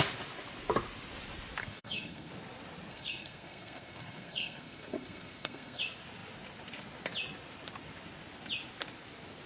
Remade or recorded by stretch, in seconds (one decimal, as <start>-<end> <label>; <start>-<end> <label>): 0.0-1.6 recorded; 1.6-2.3 remade; 2.3-2.9 recorded; 2.9-5.8 remade; 5.8-9.5 recorded

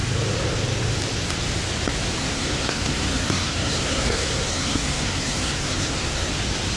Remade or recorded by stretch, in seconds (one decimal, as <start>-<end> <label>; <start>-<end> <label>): 0.0-2.2 recorded; 2.2-6.3 remade; 6.3-6.8 recorded

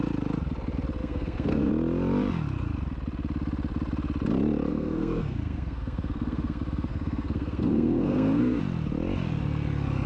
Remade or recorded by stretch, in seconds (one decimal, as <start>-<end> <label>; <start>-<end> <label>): 0.0-1.0 recorded; 1.0-1.7 remade; 1.7-4.7 recorded; 4.7-8.6 remade; 8.6-10.1 recorded

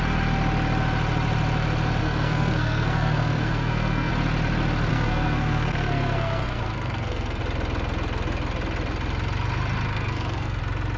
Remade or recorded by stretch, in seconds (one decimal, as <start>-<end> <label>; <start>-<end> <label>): 0.0-2.0 recorded; 2.0-4.1 remade; 4.1-4.9 recorded; 4.9-7.4 remade; 7.4-9.9 recorded; 9.9-10.6 remade; 10.6-11.0 recorded

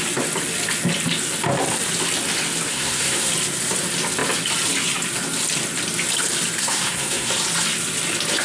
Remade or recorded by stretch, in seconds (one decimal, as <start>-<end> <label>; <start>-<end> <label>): 0.0-2.7 recorded; 2.7-3.3 remade; 3.3-6.6 recorded; 6.6-7.3 remade; 7.3-8.4 recorded

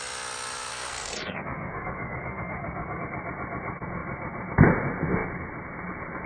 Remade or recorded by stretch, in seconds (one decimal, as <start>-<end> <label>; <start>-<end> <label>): 0.0-0.7 recorded; 0.7-3.0 remade; 3.0-6.3 recorded